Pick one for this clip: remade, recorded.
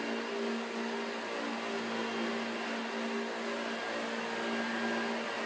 recorded